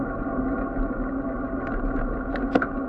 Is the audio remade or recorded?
recorded